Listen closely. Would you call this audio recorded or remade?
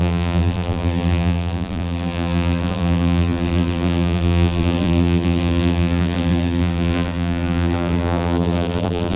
remade